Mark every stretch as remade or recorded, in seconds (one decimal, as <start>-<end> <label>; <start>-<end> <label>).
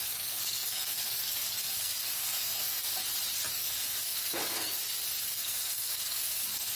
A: 0.0-3.0 remade; 3.0-3.5 recorded; 3.5-4.8 remade; 4.8-5.3 recorded; 5.3-6.8 remade